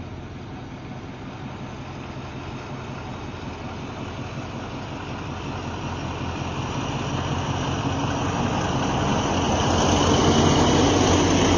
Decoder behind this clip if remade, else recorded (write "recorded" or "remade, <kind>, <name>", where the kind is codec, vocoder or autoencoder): recorded